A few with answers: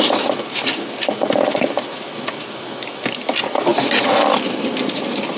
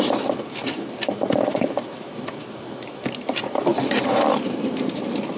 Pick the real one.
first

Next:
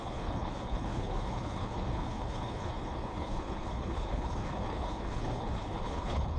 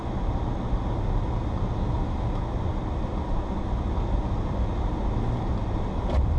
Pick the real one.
second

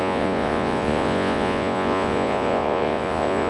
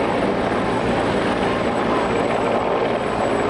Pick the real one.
second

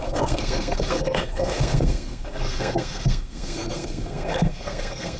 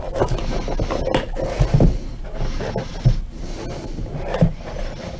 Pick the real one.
second